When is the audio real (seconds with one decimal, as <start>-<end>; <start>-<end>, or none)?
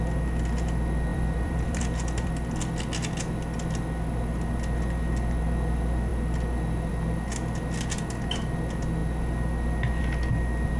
0.0-1.1; 2.3-10.8